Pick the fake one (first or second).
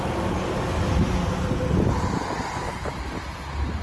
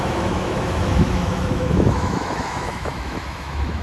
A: second